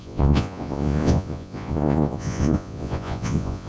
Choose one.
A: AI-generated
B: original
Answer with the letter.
A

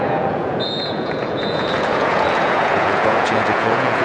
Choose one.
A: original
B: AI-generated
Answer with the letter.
B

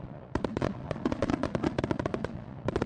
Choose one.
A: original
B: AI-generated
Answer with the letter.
B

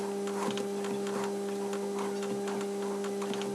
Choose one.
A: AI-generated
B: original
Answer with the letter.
B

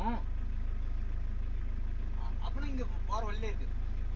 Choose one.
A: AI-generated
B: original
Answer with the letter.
B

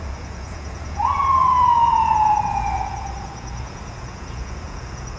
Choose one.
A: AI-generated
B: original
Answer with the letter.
A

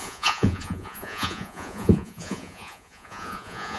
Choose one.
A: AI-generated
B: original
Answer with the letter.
A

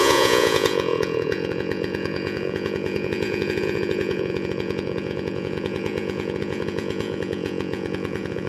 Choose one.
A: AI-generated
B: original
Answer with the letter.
A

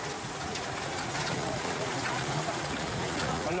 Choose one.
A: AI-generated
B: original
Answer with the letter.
A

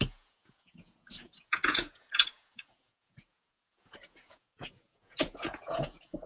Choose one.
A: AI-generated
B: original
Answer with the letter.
A